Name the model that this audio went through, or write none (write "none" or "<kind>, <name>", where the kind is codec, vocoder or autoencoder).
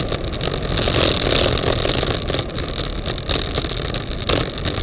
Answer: none